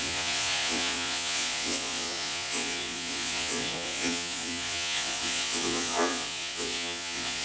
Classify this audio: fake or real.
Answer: fake